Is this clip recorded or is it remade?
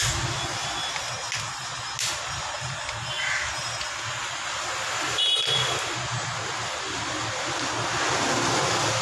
recorded